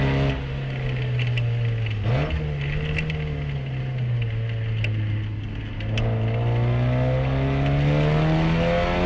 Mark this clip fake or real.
real